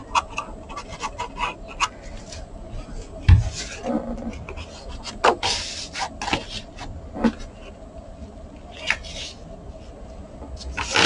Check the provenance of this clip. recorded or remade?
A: recorded